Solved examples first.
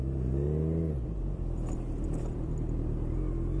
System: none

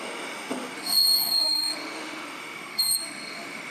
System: autoencoder, DAC-VAE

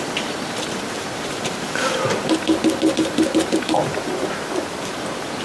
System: none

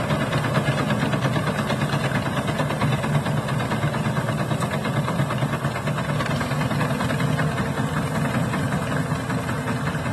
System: none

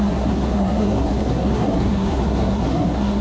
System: codec, SNAC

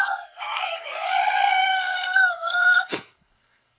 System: codec, SNAC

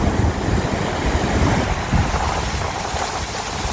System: none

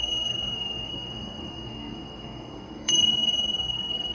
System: codec, SNAC